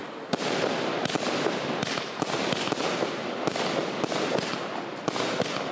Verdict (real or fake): real